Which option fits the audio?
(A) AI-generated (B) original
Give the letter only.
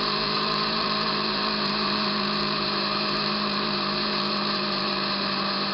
A